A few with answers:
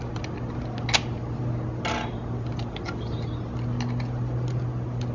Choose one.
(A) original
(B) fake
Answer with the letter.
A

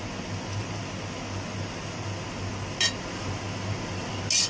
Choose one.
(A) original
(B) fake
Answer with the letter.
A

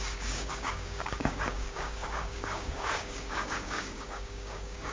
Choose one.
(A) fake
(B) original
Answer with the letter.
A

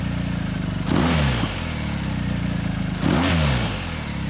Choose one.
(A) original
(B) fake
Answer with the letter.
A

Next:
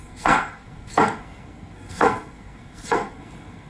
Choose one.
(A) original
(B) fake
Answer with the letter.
B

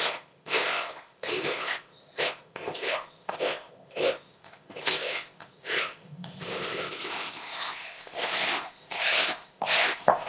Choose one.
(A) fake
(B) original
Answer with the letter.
A